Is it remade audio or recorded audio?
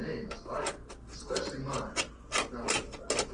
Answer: recorded